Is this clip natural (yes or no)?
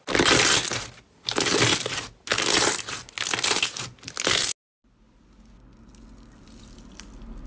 yes